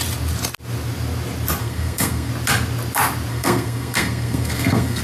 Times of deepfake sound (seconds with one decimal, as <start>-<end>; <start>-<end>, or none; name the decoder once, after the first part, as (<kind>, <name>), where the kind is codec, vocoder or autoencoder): 1.6-2.3 (codec, SNAC); 3.3-5.0